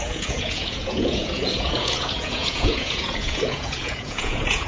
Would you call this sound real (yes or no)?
no